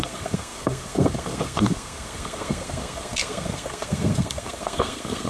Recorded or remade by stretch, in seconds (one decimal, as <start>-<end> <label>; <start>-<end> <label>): 0.0-5.3 remade